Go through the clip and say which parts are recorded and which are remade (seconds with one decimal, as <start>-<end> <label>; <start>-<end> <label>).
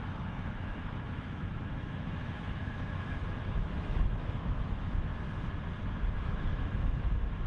0.0-5.1 remade; 5.1-6.1 recorded; 6.1-7.5 remade